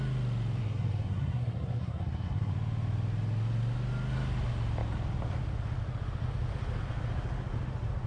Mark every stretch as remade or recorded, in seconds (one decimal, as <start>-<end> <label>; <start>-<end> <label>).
0.0-0.6 recorded; 0.6-2.5 remade; 2.5-8.1 recorded